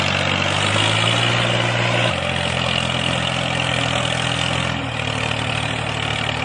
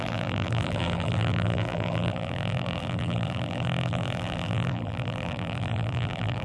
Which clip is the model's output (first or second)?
second